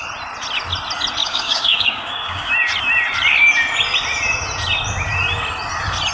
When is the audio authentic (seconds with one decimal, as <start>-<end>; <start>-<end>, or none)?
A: 0.0-1.2; 2.5-6.1

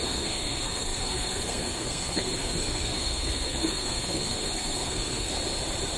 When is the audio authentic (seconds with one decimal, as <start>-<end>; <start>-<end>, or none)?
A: 5.3-6.0

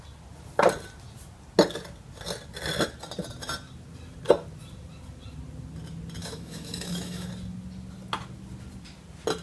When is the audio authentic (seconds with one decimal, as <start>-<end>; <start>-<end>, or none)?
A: 0.0-6.2; 7.3-9.4

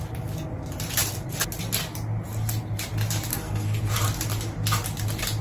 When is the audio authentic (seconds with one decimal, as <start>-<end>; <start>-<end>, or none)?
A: 0.0-3.3; 3.8-5.4

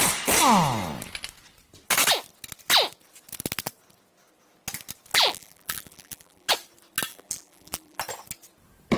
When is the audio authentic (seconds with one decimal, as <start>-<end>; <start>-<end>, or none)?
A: 0.0-5.1; 6.5-7.1; 8.0-9.0

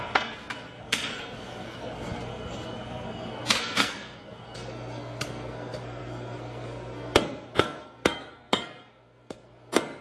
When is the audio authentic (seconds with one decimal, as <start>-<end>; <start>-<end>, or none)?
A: none